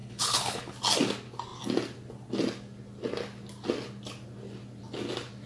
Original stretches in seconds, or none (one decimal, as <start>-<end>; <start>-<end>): 0.7-5.5